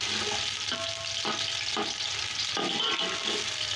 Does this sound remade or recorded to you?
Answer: recorded